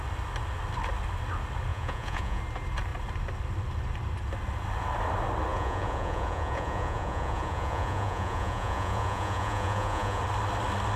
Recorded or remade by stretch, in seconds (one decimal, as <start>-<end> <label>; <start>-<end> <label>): 0.0-1.7 recorded; 1.7-2.4 remade; 2.4-5.5 recorded; 5.5-10.2 remade; 10.2-11.0 recorded